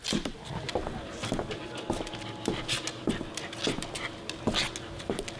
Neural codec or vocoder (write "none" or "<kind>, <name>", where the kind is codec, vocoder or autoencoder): none